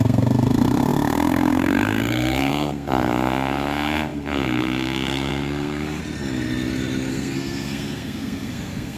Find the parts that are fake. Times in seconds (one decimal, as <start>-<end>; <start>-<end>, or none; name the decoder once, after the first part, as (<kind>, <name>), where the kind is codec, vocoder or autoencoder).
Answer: 0.0-6.0 (codec, SNAC); 7.1-9.0